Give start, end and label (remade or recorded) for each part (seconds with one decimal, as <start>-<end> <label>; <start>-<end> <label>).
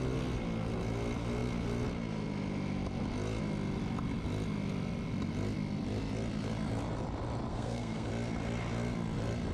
0.0-7.5 recorded; 7.5-8.1 remade; 8.1-9.5 recorded